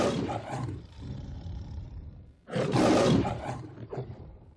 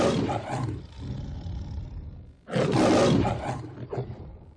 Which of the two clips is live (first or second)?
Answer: second